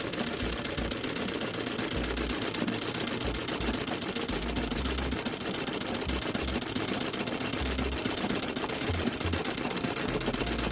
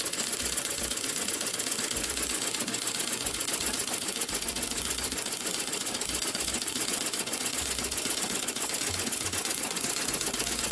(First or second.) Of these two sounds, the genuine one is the first